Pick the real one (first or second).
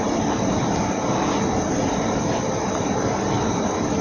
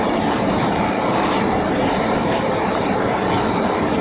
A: first